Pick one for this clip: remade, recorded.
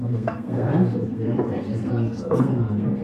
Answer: remade